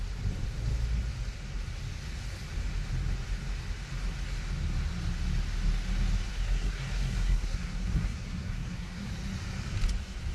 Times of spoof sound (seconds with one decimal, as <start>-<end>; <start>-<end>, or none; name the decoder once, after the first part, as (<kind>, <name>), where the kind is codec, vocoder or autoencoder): 6.3-9.1 (codec, SNAC)